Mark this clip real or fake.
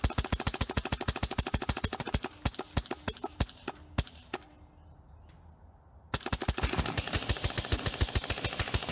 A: real